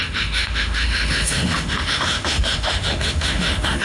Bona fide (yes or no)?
no